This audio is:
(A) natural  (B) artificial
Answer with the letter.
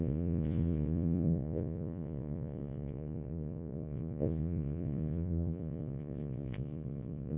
B